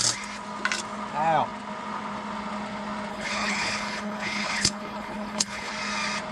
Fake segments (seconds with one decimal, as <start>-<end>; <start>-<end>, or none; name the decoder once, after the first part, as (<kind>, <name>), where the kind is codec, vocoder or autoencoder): 3.1-5.7 (codec, HILCodec)